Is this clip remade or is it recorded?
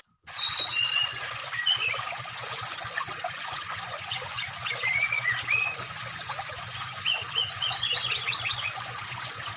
remade